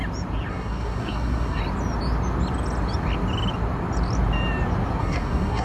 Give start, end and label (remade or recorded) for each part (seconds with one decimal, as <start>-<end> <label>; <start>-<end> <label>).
0.0-0.5 recorded; 0.5-1.6 remade; 1.6-5.0 recorded; 5.0-5.6 remade